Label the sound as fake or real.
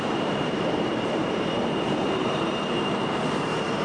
fake